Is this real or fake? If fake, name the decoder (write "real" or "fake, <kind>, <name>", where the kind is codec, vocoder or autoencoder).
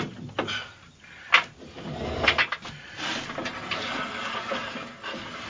real